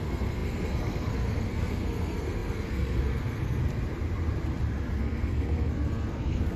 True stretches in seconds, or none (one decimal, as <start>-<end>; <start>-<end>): 3.6-5.0